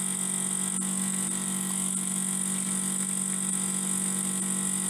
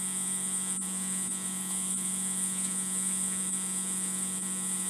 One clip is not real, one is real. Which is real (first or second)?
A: first